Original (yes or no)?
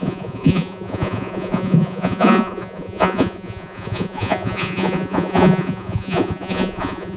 no